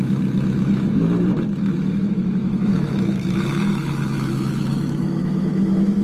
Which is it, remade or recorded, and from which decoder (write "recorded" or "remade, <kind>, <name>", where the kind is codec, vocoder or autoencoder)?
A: remade, autoencoder, DAC-VAE